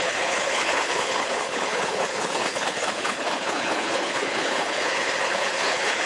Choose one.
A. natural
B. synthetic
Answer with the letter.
B